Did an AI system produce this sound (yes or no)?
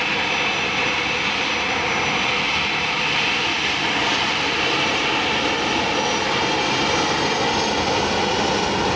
no